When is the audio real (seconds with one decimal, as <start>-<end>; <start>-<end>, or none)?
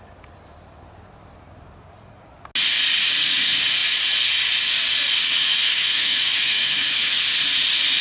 0.0-5.4; 7.2-8.0